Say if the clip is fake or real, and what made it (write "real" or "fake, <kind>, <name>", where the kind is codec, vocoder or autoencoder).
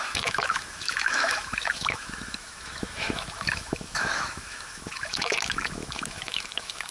fake, autoencoder, DAC-VAE